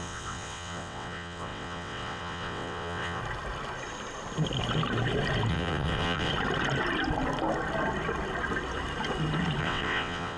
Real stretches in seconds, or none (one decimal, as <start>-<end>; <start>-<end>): 3.2-5.5; 6.3-9.6